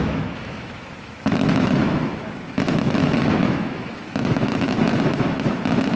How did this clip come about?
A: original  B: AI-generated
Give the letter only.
B